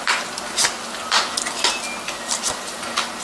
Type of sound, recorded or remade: recorded